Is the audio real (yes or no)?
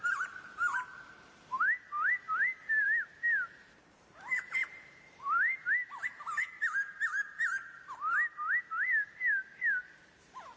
no